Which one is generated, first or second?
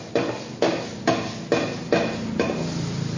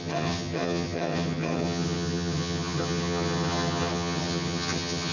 second